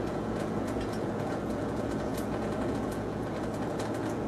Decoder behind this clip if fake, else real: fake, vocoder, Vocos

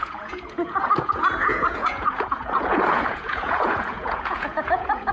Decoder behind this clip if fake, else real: fake, vocoder, Vocos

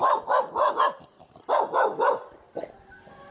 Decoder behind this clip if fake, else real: real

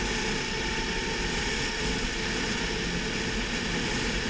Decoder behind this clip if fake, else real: real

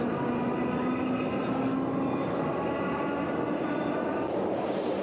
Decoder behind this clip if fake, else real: real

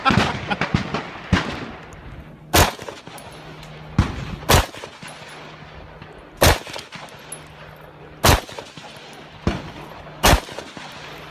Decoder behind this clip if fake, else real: real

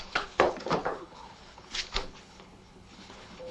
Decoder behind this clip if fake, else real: fake, codec, HILCodec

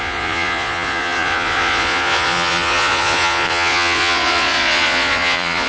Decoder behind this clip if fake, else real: fake, vocoder, Vocos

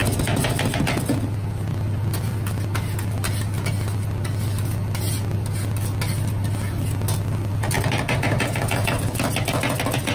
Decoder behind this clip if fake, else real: real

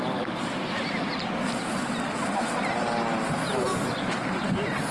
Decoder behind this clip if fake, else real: real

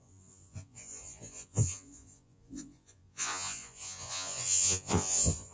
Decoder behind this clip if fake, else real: fake, vocoder, Vocos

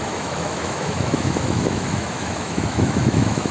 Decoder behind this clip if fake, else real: fake, autoencoder, DAC-VAE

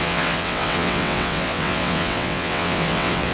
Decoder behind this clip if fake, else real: fake, vocoder, WaveNeXt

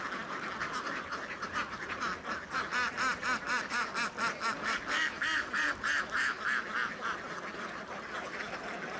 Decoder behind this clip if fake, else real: real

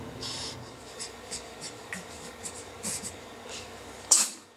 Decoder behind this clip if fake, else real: fake, codec, DAC